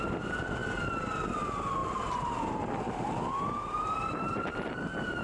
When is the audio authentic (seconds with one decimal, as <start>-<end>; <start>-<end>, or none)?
0.0-1.8

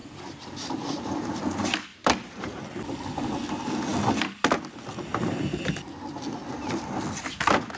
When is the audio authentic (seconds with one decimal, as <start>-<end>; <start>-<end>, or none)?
1.3-1.9; 2.6-7.8

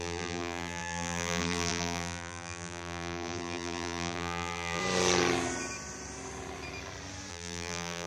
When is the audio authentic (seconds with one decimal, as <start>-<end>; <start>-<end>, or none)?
4.8-7.3

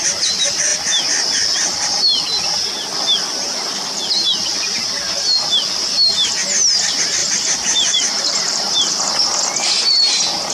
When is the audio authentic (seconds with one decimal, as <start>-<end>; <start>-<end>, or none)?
0.0-7.2; 8.9-10.5